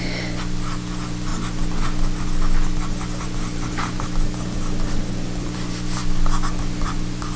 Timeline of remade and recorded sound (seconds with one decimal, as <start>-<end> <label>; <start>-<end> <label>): 0.0-7.4 recorded